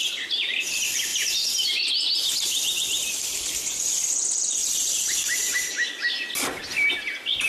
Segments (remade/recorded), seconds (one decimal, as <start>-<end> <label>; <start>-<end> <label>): 0.0-1.1 recorded; 1.1-1.9 remade; 1.9-4.6 recorded; 4.6-5.9 remade; 5.9-7.5 recorded